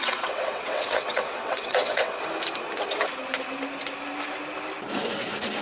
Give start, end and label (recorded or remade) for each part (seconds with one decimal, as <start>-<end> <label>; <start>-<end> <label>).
0.0-2.2 remade; 2.2-5.6 recorded